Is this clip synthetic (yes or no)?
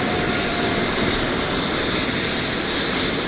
yes